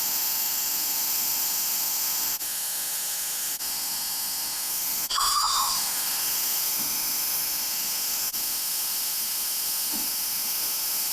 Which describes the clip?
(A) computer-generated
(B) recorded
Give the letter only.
A